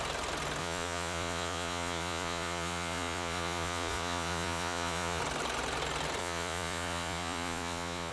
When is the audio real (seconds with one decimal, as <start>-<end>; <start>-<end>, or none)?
0.0-0.6; 5.2-6.2